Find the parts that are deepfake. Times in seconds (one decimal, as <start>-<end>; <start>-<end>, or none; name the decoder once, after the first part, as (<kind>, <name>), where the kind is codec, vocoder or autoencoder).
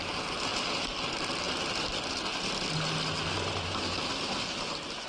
none